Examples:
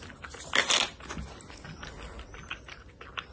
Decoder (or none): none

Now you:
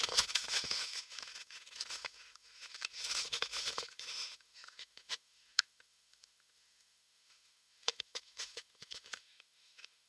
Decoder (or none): autoencoder, DAC-VAE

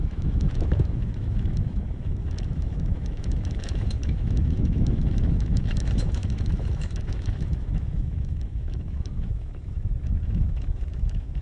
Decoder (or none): autoencoder, DAC-VAE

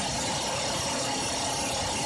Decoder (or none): none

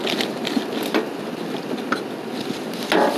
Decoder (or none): none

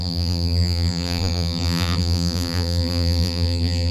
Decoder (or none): vocoder, BigVGAN v2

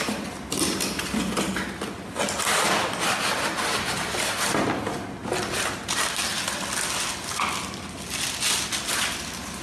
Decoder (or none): none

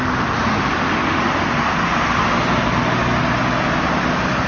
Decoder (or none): none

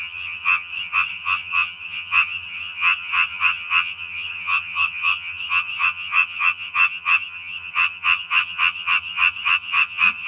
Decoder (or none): vocoder, HiFi-GAN